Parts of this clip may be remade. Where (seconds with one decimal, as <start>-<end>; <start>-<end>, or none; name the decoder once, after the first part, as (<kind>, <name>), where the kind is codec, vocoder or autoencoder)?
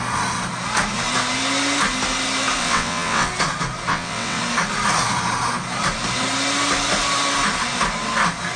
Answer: 2.6-3.3 (vocoder, WaveNeXt); 3.9-4.4